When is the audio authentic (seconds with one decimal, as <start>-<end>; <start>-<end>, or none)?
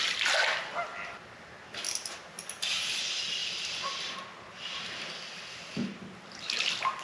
0.0-7.0